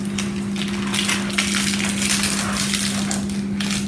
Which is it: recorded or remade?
recorded